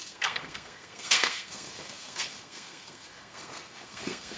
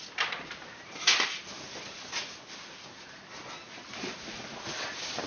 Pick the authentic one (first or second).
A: second